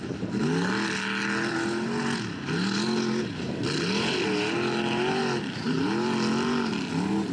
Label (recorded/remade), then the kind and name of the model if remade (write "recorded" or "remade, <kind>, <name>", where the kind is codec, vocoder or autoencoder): recorded